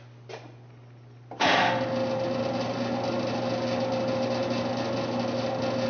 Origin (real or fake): real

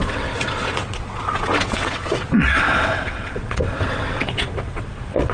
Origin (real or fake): fake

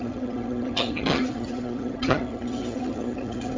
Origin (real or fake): fake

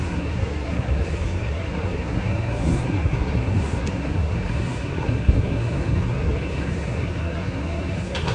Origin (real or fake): fake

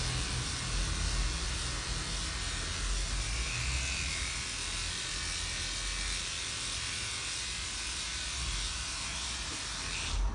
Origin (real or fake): real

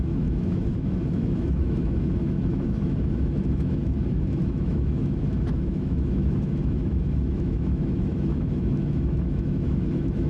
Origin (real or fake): fake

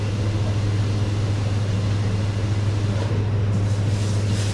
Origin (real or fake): real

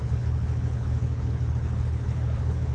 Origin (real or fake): fake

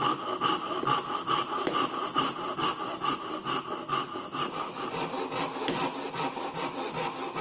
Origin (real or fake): real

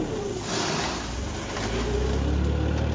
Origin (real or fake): real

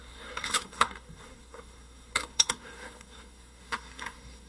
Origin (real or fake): fake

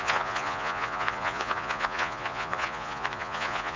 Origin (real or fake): fake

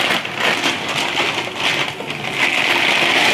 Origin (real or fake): real